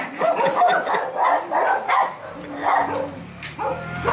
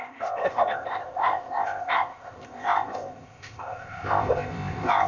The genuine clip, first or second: first